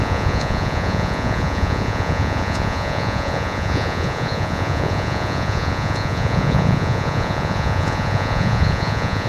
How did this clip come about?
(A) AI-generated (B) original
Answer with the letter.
A